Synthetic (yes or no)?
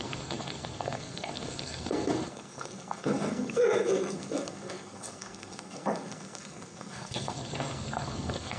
yes